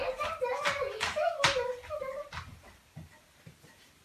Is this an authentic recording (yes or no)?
yes